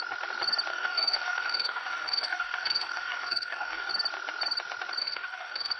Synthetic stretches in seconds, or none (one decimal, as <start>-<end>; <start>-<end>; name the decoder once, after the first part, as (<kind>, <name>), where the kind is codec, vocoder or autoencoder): 0.7-3.9 (codec, DAC); 5.0-5.8

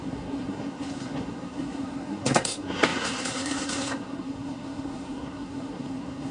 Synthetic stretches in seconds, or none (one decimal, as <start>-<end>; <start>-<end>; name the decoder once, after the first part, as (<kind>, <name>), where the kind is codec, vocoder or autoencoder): 0.0-6.3 (codec, SNAC)

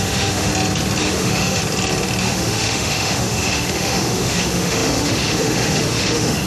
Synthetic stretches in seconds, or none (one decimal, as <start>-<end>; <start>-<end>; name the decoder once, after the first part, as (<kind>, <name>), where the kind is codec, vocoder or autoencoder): 0.0-0.5 (autoencoder, DAC-VAE); 1.0-1.6; 2.2-6.5

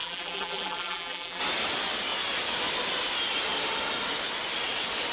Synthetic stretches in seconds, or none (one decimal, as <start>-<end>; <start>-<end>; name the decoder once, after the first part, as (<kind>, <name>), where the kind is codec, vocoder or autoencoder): 0.0-1.4 (vocoder, BigVGAN v2)

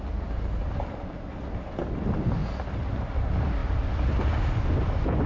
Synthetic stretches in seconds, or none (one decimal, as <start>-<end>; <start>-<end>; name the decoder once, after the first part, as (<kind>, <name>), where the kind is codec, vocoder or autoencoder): none

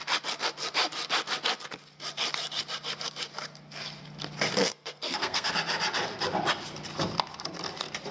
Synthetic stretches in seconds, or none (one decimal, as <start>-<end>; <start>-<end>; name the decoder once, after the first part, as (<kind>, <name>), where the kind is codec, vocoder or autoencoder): 4.6-5.5 (codec, SNAC)